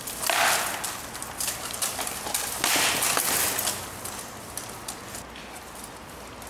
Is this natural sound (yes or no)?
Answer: yes